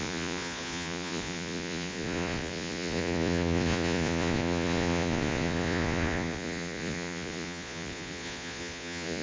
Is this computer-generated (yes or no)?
yes